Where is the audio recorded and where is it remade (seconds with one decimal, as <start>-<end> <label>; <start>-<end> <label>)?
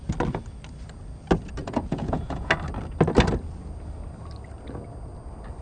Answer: 0.0-1.6 recorded; 1.6-2.5 remade; 2.5-5.6 recorded